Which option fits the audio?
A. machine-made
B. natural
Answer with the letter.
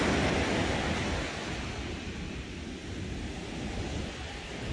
B